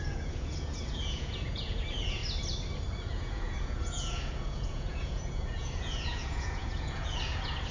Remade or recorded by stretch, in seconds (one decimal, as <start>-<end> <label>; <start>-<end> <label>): 0.0-2.2 remade; 2.2-3.1 recorded; 3.1-7.7 remade